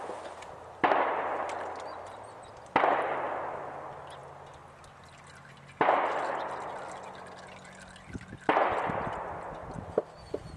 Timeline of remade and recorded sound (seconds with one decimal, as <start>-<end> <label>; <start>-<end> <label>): 0.0-10.6 recorded

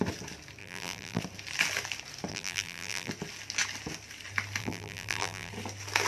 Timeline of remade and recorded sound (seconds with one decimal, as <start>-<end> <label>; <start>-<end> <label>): 0.0-0.6 recorded; 0.6-1.2 remade; 1.2-2.3 recorded; 2.3-3.1 remade; 3.1-4.6 recorded; 4.6-5.5 remade; 5.5-6.1 recorded

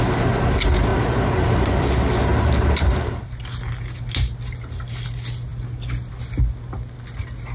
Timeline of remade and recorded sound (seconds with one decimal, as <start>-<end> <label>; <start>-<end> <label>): 0.0-0.9 recorded; 0.9-1.8 remade; 1.8-2.3 recorded; 2.3-3.7 remade; 3.7-7.5 recorded

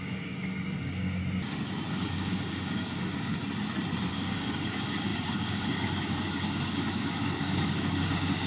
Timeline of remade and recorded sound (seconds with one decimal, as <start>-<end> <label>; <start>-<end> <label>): 0.0-1.2 remade; 1.2-1.9 recorded; 1.9-3.4 remade; 3.4-4.1 recorded; 4.1-8.5 remade

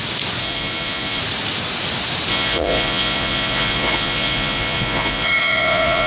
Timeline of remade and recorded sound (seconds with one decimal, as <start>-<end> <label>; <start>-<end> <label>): 0.0-0.4 recorded; 0.4-1.2 remade; 1.2-2.3 recorded; 2.3-6.1 remade

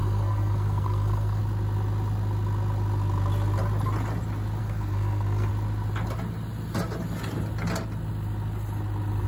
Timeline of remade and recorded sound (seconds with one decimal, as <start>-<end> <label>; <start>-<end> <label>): 0.0-1.4 remade; 1.4-4.6 recorded; 4.6-5.5 remade; 5.5-9.3 recorded